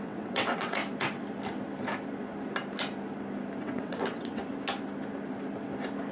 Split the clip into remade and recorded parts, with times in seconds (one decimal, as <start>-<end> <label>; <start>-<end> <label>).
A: 0.0-0.8 remade; 0.8-3.6 recorded; 3.6-4.4 remade; 4.4-6.1 recorded